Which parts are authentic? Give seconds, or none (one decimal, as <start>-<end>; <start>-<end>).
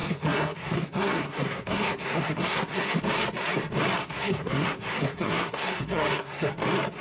3.0-4.0; 6.5-7.0